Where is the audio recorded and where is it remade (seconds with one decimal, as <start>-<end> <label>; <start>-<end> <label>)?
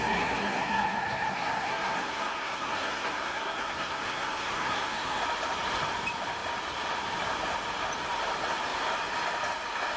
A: 0.0-5.2 remade; 5.2-10.0 recorded